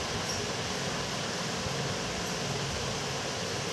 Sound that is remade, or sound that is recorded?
recorded